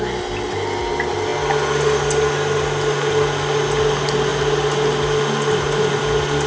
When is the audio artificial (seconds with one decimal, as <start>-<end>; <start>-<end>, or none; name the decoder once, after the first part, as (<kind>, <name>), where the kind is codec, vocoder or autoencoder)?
none